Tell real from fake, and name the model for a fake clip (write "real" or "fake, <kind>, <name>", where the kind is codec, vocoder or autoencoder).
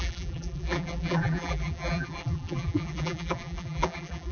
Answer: fake, vocoder, BigVGAN v2